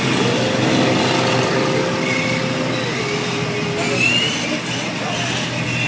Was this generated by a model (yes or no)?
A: no